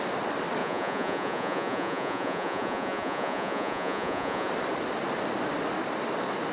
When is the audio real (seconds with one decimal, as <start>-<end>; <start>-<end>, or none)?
0.0-0.6; 4.5-6.5